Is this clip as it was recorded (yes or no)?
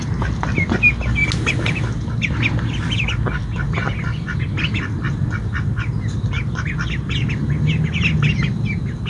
yes